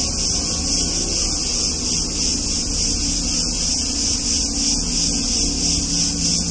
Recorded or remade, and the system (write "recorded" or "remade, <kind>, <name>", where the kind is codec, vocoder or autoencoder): recorded